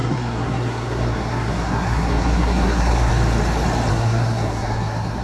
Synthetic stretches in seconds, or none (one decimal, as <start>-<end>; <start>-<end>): 0.0-3.1; 3.9-5.2